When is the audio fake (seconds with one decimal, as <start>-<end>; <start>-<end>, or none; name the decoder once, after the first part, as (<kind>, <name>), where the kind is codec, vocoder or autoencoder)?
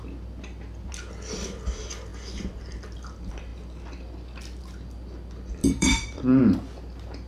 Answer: 5.6-6.4 (vocoder, BigVGAN v2)